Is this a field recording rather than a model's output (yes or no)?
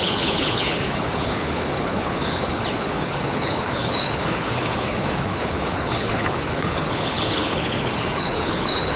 no